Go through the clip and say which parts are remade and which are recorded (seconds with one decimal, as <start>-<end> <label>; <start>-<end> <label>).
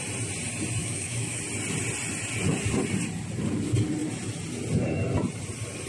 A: 0.0-0.8 recorded; 0.8-1.4 remade; 1.4-5.9 recorded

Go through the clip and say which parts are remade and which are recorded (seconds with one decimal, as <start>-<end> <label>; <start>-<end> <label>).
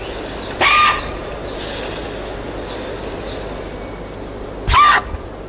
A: 0.0-5.5 recorded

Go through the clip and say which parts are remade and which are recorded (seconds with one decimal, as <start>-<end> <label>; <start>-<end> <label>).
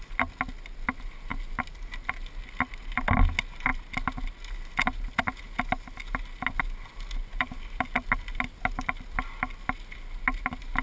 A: 0.0-10.8 recorded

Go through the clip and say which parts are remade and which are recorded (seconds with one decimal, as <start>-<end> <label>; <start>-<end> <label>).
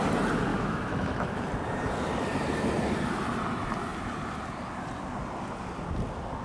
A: 0.0-0.5 recorded; 0.5-1.4 remade; 1.4-6.4 recorded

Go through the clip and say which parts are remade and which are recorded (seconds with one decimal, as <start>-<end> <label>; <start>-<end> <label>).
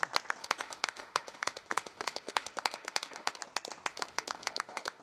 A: 0.0-0.4 recorded; 0.4-3.4 remade; 3.4-3.9 recorded; 3.9-5.0 remade